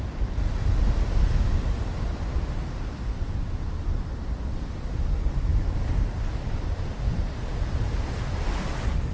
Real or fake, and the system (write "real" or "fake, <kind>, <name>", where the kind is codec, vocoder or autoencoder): real